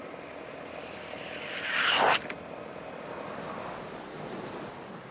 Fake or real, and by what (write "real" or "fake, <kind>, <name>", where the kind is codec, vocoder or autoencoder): real